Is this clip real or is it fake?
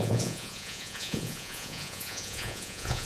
fake